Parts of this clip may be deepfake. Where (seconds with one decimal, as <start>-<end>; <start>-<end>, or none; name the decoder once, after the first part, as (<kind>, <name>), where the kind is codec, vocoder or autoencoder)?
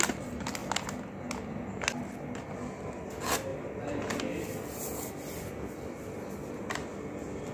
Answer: none